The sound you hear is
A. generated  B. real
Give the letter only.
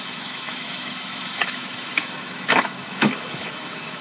A